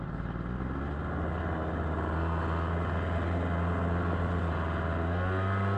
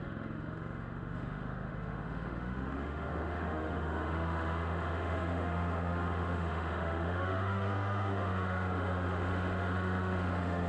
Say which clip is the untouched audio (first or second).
first